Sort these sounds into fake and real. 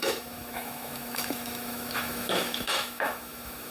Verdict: fake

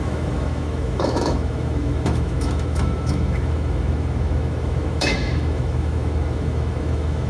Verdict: fake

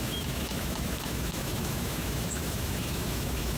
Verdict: fake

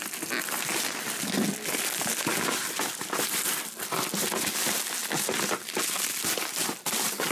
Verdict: real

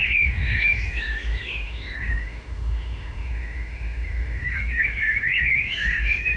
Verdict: fake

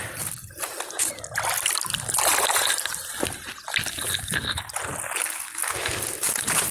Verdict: real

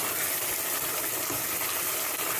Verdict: real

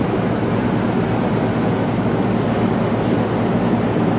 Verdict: real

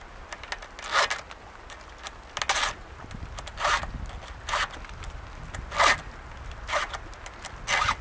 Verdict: real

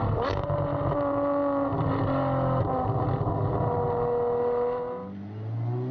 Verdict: real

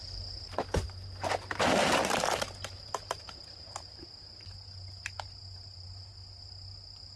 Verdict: real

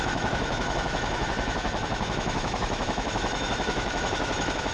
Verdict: fake